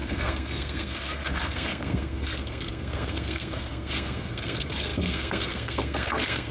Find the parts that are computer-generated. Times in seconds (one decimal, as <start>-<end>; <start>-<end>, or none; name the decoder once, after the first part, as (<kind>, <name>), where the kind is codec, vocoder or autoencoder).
0.0-6.5 (codec, SNAC)